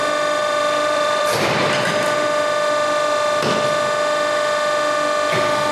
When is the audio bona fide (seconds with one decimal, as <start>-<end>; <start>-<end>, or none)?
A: 0.0-0.4; 1.6-5.7